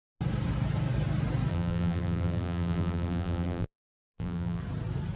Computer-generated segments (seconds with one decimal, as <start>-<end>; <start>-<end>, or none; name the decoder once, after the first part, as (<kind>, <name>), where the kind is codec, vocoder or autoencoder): 1.5-4.6 (vocoder, BigVGAN v2)